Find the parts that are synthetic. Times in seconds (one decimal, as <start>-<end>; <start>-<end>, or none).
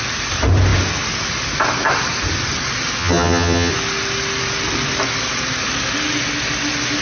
3.0-3.7